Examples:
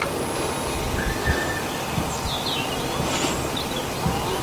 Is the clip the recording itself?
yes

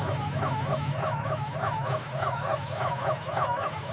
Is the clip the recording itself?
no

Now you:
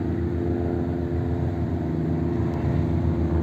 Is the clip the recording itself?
yes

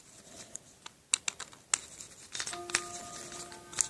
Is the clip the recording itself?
yes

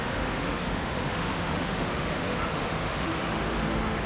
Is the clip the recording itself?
no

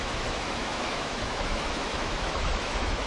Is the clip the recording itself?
no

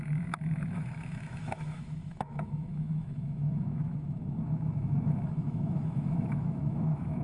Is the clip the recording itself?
no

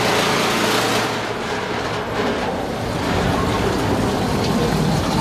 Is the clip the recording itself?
yes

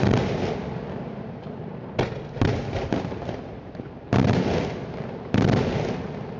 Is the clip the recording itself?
yes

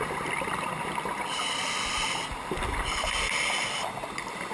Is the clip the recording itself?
yes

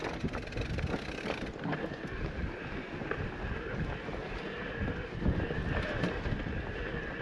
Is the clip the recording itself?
yes